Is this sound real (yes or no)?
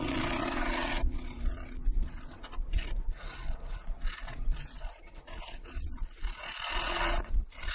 no